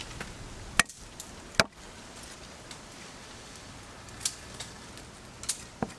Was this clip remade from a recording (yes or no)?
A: no